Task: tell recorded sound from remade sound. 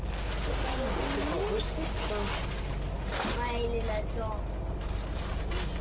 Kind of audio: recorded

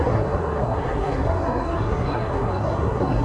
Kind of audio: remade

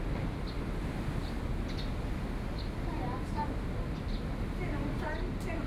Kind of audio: recorded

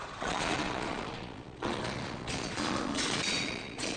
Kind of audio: remade